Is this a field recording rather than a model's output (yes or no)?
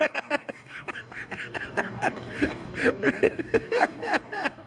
no